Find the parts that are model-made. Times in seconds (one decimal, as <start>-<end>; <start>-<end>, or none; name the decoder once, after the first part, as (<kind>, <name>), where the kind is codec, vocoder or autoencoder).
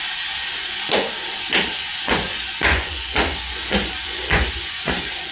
0.6-1.1 (vocoder, Vocos); 1.7-5.3